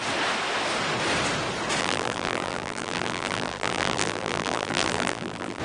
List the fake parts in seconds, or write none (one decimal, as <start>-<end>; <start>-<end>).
1.8-5.6